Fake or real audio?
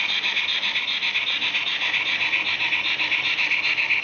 real